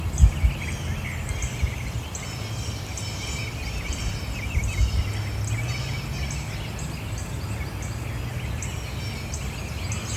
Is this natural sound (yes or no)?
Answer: yes